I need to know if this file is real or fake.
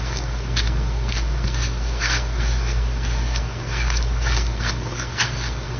fake